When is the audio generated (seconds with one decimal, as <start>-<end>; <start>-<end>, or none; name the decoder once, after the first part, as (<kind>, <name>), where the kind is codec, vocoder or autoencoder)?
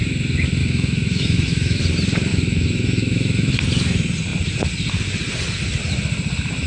0.6-1.8 (autoencoder, DAC-VAE); 2.3-3.5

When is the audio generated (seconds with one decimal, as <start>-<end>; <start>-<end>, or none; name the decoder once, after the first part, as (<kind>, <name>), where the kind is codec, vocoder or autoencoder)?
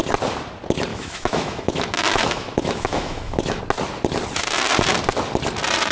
0.9-3.6 (autoencoder, DAC-VAE)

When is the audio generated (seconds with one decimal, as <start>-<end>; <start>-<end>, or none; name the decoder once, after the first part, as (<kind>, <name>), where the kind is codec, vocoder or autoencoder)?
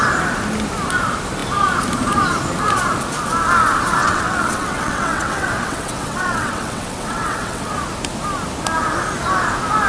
4.0-7.7 (vocoder, WaveNeXt)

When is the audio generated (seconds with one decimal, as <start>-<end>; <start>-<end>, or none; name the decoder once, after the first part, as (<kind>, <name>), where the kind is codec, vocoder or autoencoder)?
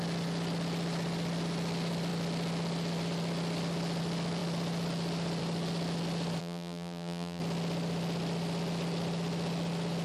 6.4-7.4 (vocoder, BigVGAN v2)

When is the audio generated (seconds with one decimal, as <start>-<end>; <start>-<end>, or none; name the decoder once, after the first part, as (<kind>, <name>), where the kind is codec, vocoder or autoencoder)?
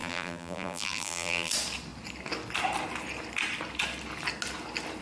0.0-1.5 (vocoder, BigVGAN v2)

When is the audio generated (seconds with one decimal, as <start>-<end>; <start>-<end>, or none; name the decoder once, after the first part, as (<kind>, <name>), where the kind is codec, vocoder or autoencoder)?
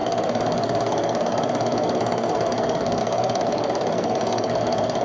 0.0-5.0 (codec, SNAC)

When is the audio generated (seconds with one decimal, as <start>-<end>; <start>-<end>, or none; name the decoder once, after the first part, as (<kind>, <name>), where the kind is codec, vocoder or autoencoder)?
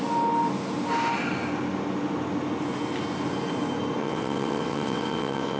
4.0-5.6 (vocoder, WaveNeXt)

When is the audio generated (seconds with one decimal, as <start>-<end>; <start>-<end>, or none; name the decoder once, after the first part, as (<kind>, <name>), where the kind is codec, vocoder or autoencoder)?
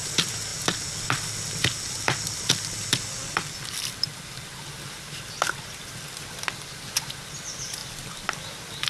0.5-4.5 (vocoder, BigVGAN v2); 7.8-8.4